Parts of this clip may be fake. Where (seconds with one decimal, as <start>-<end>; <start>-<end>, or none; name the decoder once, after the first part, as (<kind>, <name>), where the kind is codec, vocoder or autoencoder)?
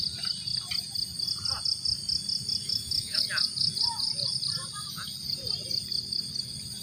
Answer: 2.6-3.2 (autoencoder, DAC-VAE)